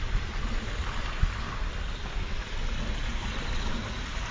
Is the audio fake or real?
real